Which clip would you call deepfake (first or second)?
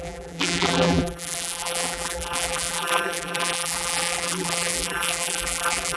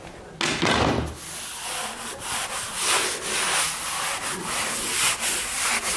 first